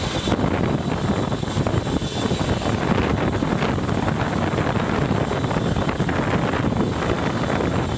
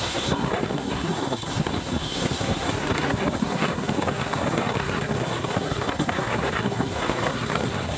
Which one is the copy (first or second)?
second